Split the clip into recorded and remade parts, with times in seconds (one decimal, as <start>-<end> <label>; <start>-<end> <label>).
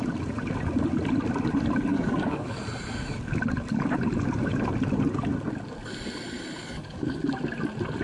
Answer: 0.0-1.9 recorded; 1.9-2.6 remade; 2.6-6.6 recorded; 6.6-7.2 remade; 7.2-8.0 recorded